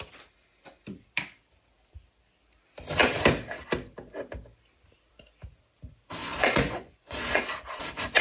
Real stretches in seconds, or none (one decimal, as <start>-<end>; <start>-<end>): 0.0-6.2; 7.4-8.2